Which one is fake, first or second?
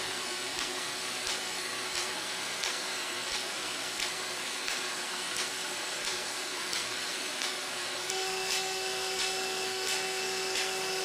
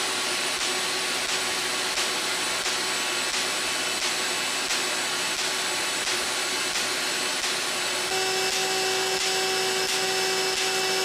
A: first